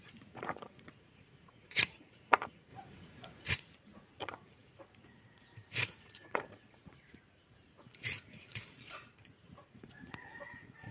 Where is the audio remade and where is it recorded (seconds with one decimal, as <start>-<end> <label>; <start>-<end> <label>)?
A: 0.0-10.9 remade